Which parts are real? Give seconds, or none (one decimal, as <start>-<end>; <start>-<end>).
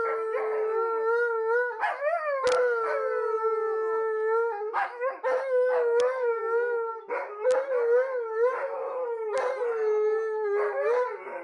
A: 0.0-4.7; 6.9-11.4